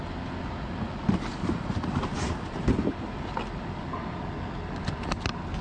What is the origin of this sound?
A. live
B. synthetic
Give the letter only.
A